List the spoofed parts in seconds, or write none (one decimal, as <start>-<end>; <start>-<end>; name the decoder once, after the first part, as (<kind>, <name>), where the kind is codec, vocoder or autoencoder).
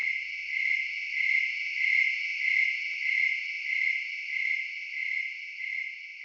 none